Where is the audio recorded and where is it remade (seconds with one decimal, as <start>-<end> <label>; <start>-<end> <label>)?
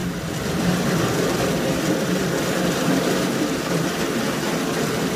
0.0-5.2 recorded